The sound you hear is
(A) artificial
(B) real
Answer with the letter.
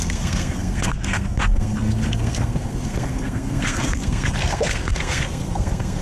A